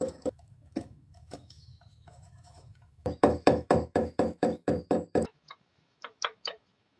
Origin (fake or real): fake